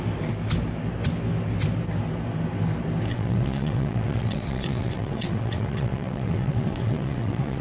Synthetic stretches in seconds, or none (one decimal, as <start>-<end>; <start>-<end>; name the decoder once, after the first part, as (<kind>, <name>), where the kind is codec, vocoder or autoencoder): 3.1-7.6 (vocoder, WaveNeXt)

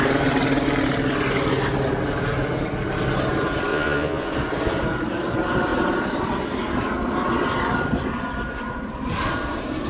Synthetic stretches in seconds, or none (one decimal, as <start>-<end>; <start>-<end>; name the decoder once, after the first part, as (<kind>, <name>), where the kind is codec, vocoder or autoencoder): 3.7-4.3 (vocoder, Vocos)

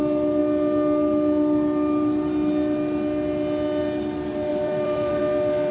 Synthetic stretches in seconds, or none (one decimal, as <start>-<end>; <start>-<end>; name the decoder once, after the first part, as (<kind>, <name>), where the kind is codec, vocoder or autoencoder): 4.5-5.2 (vocoder, BigVGAN v2)